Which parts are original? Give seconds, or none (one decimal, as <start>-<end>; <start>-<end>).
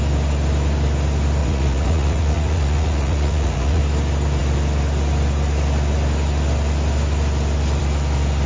0.0-1.4; 3.8-8.5